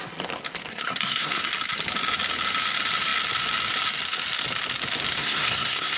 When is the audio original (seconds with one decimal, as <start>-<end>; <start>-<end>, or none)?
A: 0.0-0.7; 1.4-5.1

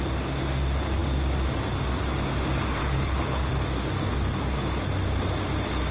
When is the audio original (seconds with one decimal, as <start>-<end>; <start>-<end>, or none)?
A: 0.0-2.8; 3.5-5.9

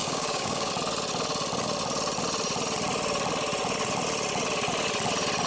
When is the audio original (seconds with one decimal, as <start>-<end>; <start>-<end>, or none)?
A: 0.7-5.5

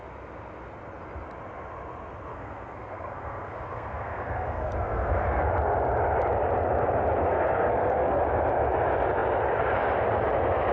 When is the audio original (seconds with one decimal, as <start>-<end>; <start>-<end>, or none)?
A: 0.0-2.3; 5.5-7.2; 8.2-10.7

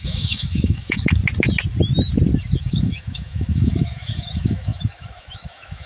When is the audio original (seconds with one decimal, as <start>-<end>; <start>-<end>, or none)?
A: 1.2-2.6

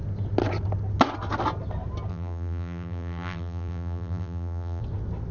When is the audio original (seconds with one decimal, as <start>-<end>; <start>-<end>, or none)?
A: 0.0-2.1; 4.8-5.3

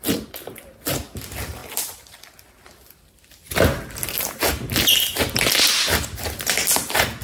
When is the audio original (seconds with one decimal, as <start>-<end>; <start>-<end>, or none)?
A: 0.0-7.2

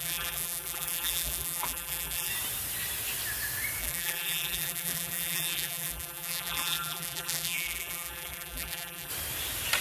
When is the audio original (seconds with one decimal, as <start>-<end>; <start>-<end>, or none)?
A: 2.3-3.8; 9.1-9.8